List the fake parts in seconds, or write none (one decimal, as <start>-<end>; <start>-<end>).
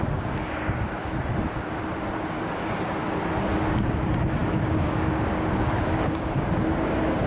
0.0-1.0; 3.7-7.3